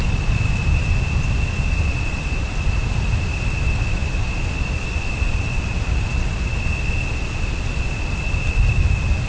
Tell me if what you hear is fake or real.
real